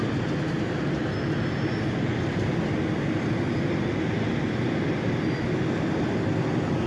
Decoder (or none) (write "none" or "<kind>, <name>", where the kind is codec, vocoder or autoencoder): none